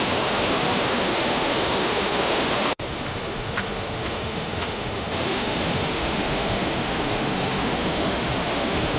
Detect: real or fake fake